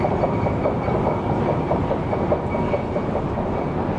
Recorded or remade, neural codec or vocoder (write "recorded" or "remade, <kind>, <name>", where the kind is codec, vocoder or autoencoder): recorded